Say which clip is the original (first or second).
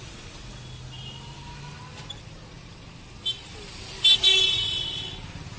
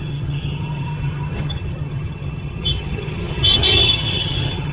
first